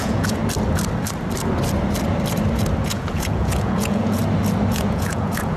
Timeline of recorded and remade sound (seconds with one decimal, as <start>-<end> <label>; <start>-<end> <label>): 0.0-0.4 remade; 0.4-2.8 recorded; 2.8-4.2 remade; 4.2-4.7 recorded; 4.7-5.6 remade